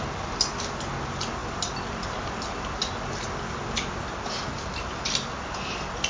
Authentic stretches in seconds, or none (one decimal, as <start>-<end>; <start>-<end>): 0.0-6.1